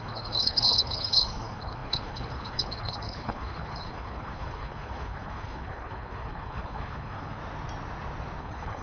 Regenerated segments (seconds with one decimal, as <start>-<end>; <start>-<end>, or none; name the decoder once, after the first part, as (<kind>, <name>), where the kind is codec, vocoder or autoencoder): 0.0-7.4 (codec, HILCodec); 8.4-8.8